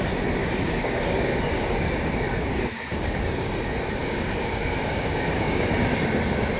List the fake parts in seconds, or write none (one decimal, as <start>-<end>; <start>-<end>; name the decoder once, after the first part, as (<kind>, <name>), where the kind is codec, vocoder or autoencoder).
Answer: 0.4-3.5 (codec, DAC); 4.0-5.7

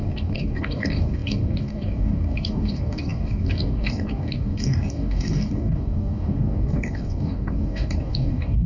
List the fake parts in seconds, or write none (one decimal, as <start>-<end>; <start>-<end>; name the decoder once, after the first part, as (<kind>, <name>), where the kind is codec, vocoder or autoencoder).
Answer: 0.0-8.7 (codec, DAC)

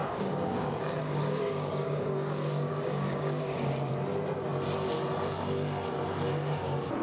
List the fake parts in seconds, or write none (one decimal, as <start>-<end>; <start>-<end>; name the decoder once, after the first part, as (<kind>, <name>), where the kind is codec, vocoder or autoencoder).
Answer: 0.0-3.9 (codec, DAC)

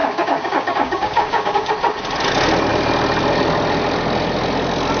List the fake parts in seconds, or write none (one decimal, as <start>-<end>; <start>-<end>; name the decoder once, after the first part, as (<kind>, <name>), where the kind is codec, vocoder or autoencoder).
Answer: 0.0-1.7 (codec, DAC)

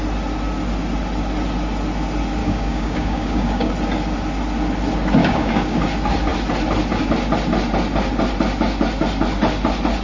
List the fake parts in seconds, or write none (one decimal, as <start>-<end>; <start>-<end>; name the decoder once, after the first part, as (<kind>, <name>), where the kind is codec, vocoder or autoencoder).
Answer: 2.4-3.7 (codec, DAC); 5.2-5.8

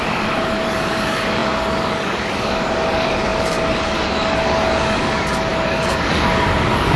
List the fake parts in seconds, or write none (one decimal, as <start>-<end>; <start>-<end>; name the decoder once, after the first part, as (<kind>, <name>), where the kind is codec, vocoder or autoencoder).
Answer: 0.0-7.0 (codec, DAC)

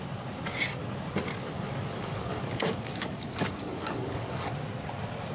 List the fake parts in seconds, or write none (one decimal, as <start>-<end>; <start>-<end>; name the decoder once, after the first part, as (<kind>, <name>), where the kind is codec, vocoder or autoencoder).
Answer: 1.3-4.5 (codec, DAC)

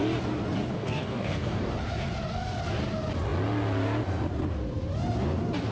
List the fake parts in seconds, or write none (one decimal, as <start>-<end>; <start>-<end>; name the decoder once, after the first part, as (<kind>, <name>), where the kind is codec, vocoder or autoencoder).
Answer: 0.7-1.7 (codec, DAC)